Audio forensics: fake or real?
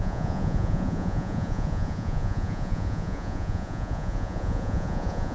fake